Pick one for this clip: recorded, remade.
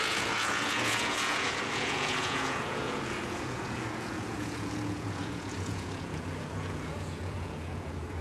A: remade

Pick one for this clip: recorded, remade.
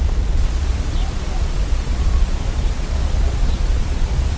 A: remade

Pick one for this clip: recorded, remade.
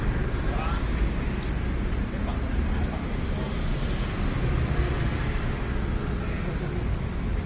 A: recorded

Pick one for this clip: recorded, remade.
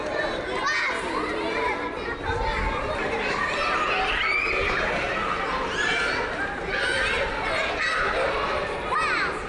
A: recorded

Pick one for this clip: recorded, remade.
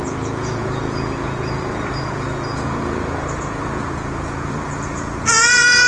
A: remade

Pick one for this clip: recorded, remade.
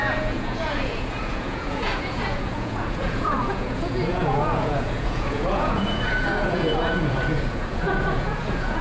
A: remade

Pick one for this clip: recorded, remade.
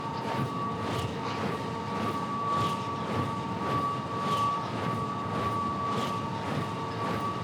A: recorded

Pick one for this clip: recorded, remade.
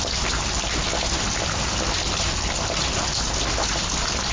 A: recorded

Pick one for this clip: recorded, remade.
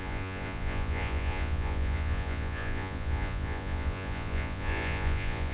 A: remade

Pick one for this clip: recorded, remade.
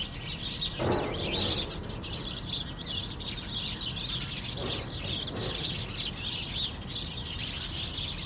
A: recorded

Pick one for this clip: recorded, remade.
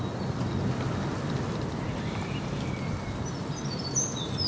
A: recorded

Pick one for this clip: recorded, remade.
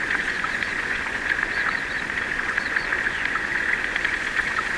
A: remade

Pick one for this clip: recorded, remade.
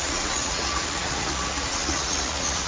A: remade